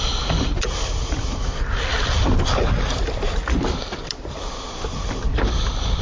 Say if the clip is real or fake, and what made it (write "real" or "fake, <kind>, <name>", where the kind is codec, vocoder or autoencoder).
real